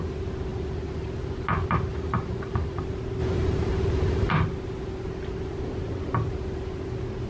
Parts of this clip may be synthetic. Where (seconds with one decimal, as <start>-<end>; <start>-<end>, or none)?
0.5-1.1; 1.9-2.8; 3.2-4.3